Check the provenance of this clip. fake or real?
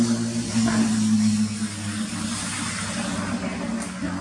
real